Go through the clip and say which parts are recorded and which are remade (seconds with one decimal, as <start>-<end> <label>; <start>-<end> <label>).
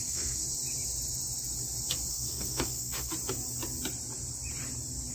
0.0-0.4 remade; 0.4-2.1 recorded; 2.1-3.1 remade; 3.1-5.1 recorded